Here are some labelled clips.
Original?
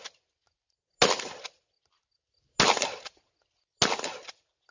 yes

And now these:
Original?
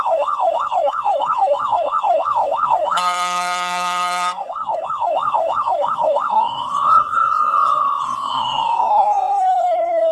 no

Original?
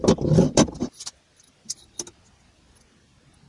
yes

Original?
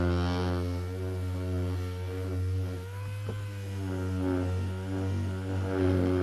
yes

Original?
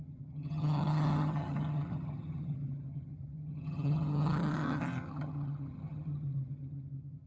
no